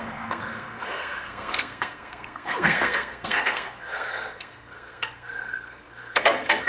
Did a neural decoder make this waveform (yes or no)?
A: yes